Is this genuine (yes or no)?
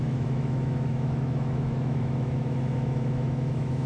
no